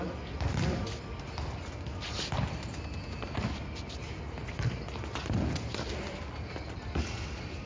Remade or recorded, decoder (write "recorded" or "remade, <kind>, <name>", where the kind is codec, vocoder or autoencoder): recorded